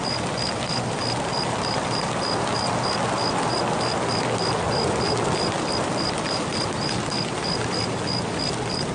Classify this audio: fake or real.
real